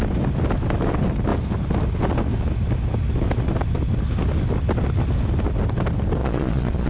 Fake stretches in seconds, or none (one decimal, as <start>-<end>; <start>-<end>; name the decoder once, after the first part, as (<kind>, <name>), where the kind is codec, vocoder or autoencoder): 6.2-6.9 (vocoder, Vocos)